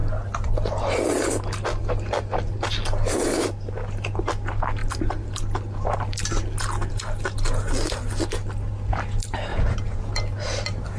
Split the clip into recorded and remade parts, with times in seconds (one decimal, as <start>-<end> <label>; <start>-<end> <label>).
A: 0.0-9.5 recorded; 9.5-10.1 remade; 10.1-11.0 recorded